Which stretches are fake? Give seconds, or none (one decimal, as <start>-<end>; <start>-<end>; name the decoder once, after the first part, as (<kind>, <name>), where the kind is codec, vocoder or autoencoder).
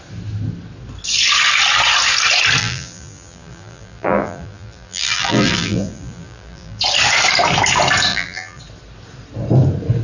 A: 2.6-6.8 (vocoder, BigVGAN v2); 8.1-8.6